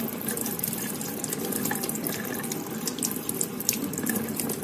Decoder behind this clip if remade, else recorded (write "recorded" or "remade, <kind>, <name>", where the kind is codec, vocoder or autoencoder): remade, vocoder, BigVGAN v2